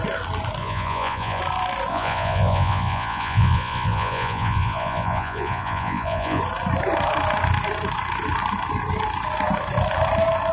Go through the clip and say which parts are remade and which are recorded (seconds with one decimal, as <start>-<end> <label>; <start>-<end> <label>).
0.0-0.6 recorded; 0.6-1.4 remade; 1.4-1.9 recorded; 1.9-6.4 remade; 6.4-10.5 recorded